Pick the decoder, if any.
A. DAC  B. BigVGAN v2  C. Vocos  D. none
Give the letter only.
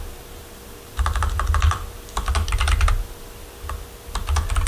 D